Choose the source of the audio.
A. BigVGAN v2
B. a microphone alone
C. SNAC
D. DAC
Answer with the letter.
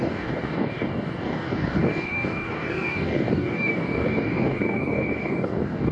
D